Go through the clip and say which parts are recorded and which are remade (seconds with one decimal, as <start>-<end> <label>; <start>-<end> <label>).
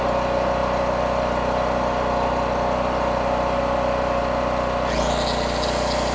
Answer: 0.0-6.1 recorded